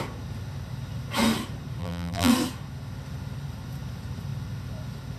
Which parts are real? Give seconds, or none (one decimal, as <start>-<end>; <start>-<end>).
0.0-1.8; 2.3-5.2